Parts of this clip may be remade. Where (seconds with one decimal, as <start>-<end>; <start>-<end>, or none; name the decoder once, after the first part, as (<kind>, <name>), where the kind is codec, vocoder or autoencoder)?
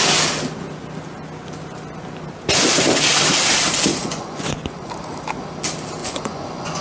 3.9-4.9 (vocoder, Vocos); 6.0-6.8